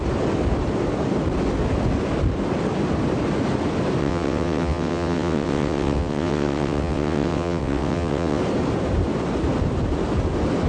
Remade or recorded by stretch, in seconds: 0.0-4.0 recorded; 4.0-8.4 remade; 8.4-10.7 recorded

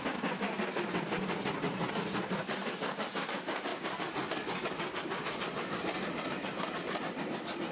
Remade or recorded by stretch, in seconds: 0.0-7.7 recorded

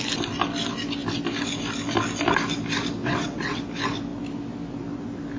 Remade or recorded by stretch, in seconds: 0.0-3.0 recorded; 3.0-3.6 remade; 3.6-5.4 recorded

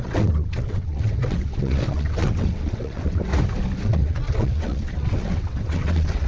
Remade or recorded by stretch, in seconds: 0.0-3.3 remade; 3.3-3.8 recorded; 3.8-6.3 remade

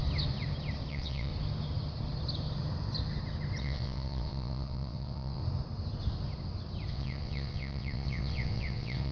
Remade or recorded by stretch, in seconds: 0.0-0.9 recorded; 0.9-1.3 remade; 1.3-3.6 recorded; 3.6-5.4 remade; 5.4-6.9 recorded; 6.9-9.1 remade

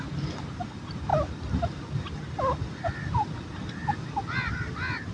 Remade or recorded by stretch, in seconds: 0.0-5.1 recorded